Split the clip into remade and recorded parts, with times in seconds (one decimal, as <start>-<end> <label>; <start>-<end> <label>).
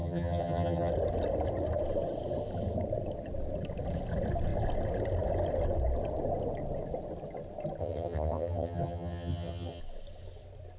0.0-0.9 remade; 0.9-7.8 recorded; 7.8-9.8 remade; 9.8-10.8 recorded